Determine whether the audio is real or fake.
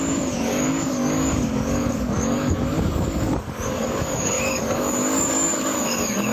fake